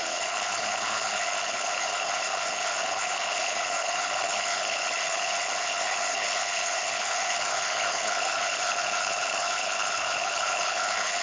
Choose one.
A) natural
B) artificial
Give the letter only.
B